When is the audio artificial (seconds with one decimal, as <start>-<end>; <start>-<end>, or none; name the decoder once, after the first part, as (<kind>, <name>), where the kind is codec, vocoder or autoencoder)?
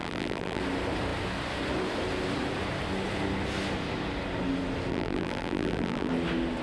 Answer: 0.0-0.6 (vocoder, BigVGAN v2); 4.9-6.1